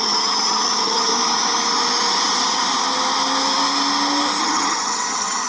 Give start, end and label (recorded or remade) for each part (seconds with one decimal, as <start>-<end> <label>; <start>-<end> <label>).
0.0-1.1 remade; 1.1-4.4 recorded; 4.4-5.5 remade